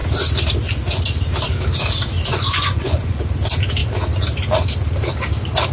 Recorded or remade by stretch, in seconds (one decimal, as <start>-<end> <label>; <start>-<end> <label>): 0.0-2.3 recorded; 2.3-3.2 remade; 3.2-5.7 recorded